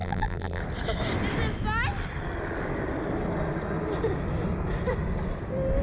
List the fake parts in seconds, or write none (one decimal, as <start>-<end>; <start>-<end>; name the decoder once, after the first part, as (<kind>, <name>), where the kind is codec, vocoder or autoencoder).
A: 0.0-0.6 (vocoder, BigVGAN v2)